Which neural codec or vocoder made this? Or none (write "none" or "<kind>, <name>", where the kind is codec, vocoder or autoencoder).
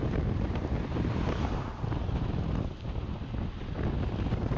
vocoder, BigVGAN v2